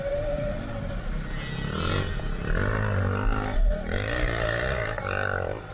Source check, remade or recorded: recorded